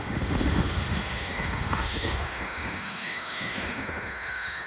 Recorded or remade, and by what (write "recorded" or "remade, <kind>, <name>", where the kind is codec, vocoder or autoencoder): remade, autoencoder, DAC-VAE